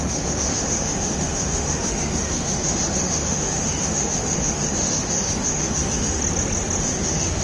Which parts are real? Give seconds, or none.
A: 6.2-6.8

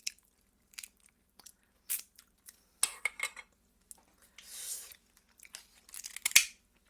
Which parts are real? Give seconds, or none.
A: 2.2-4.7; 5.5-6.9

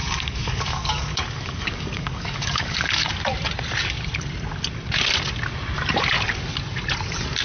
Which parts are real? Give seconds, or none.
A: 3.1-7.4

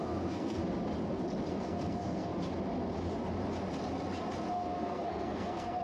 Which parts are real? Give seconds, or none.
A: 0.6-1.5; 2.3-4.5

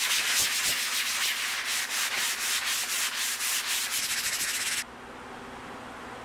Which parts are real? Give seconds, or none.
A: 0.0-6.2

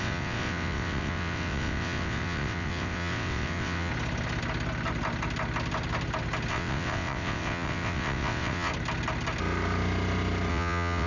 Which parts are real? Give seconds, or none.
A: 3.9-6.5; 8.7-10.5

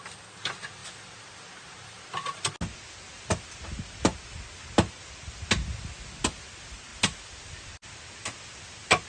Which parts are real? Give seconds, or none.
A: 0.0-6.9; 7.9-9.1

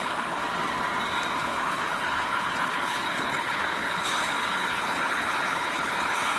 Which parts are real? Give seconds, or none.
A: 0.4-1.4